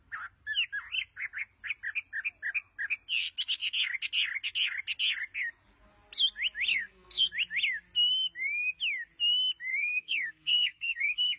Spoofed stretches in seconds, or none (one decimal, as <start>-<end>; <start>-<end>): 6.7-7.3; 9.7-11.4